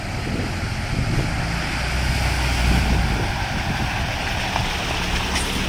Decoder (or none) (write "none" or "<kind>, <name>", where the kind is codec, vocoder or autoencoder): none